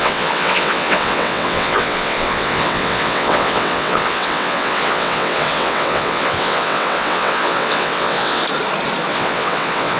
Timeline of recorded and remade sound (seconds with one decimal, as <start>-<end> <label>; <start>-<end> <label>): 0.0-8.4 remade; 8.4-9.1 recorded; 9.1-10.0 remade